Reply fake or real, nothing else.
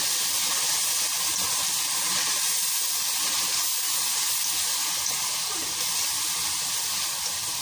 real